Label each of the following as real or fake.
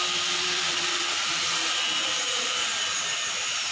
fake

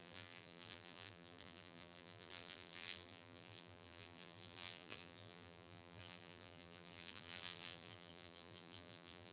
fake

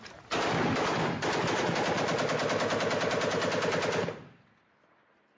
real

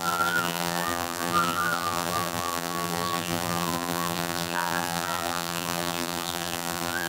fake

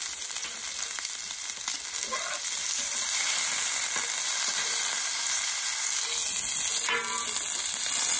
real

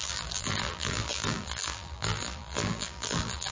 fake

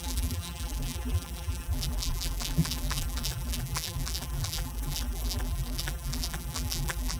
fake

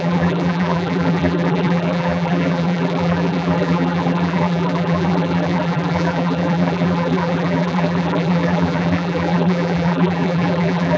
fake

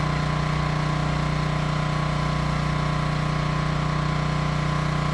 fake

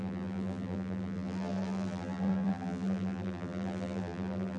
fake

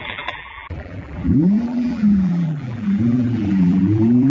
fake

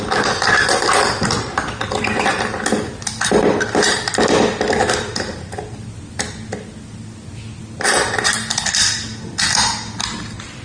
real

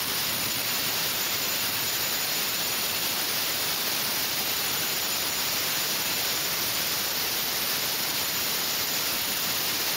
fake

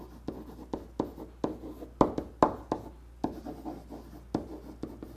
real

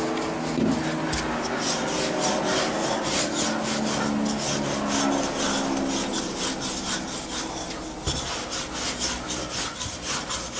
real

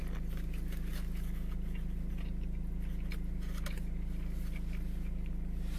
fake